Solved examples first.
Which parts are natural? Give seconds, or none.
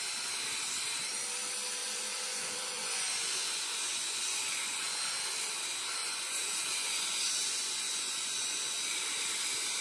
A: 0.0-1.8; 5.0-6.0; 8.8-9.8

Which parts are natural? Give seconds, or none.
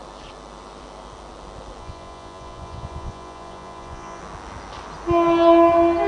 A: 0.0-1.8; 4.2-6.1